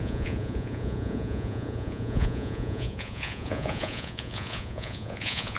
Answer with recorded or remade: remade